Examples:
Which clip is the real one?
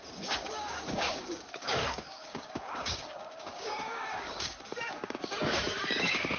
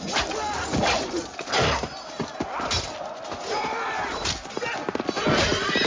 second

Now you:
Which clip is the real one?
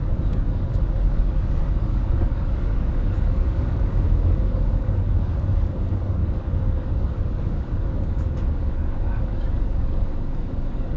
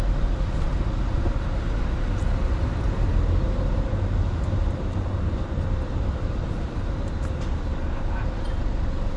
second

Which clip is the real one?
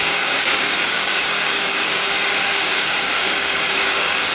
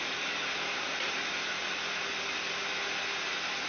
second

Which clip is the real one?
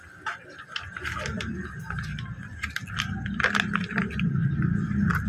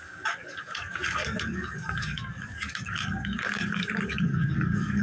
first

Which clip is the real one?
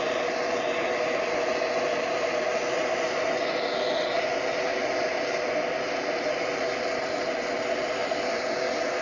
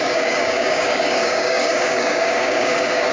first